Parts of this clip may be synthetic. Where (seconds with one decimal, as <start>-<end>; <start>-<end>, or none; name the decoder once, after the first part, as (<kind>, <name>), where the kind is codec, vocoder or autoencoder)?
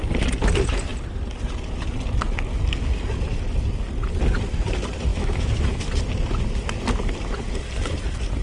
5.1-5.8 (autoencoder, DAC-VAE)